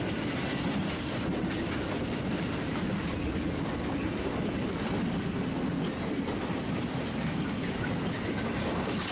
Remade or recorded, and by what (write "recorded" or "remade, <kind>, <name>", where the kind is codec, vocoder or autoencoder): recorded